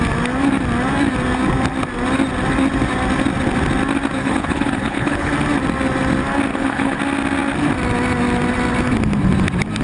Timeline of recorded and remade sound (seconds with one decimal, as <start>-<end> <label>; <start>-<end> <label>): 0.0-4.2 recorded; 4.2-5.3 remade; 5.3-6.5 recorded; 6.5-7.0 remade; 7.0-9.8 recorded